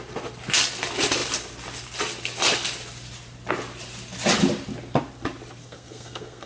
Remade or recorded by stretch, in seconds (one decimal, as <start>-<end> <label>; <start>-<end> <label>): 0.0-5.6 recorded; 5.6-6.5 remade